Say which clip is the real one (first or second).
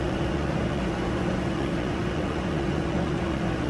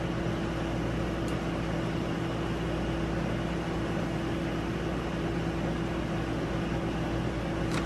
second